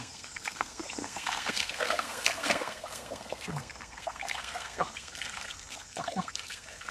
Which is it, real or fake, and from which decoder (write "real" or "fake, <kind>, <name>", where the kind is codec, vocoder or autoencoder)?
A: fake, codec, SNAC